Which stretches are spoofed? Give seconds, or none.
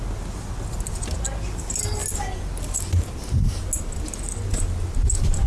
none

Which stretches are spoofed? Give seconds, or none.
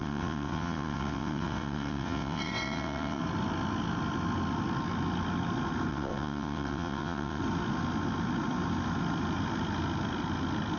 0.0-3.2 (vocoder, WaveNeXt); 5.9-7.4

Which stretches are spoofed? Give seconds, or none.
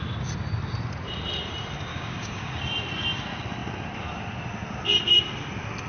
1.9-2.6 (codec, DAC)